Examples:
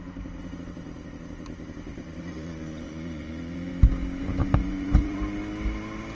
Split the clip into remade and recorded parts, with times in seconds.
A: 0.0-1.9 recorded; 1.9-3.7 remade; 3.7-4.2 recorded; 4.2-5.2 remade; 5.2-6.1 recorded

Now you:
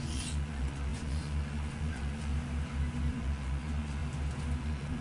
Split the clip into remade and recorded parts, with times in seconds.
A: 0.0-2.3 remade; 2.3-3.1 recorded; 3.1-4.0 remade; 4.0-4.6 recorded; 4.6-5.0 remade

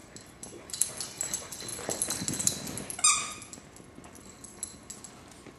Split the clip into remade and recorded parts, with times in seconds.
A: 0.0-5.6 recorded

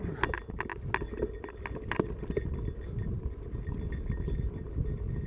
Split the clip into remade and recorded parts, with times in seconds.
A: 0.0-5.3 recorded

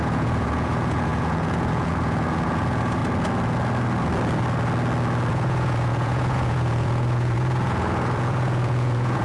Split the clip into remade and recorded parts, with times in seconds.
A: 0.0-3.0 remade; 3.0-5.3 recorded; 5.3-9.2 remade

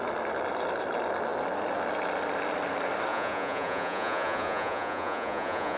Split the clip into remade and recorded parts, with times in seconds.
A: 0.0-3.1 recorded; 3.1-5.8 remade

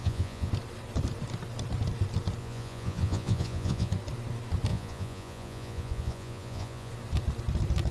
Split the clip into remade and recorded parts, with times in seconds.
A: 0.0-0.5 remade; 0.5-2.4 recorded; 2.4-3.9 remade; 3.9-4.7 recorded; 4.7-6.9 remade; 6.9-7.9 recorded

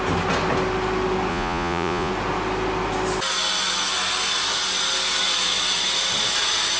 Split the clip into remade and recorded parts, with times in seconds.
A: 0.0-1.3 recorded; 1.3-2.1 remade; 2.1-6.8 recorded